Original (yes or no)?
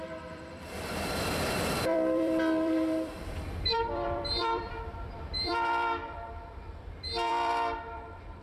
no